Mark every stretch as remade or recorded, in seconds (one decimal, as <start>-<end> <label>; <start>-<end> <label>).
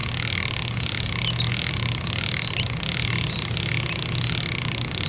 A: 0.0-5.1 recorded